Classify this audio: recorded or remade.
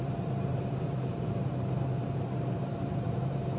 remade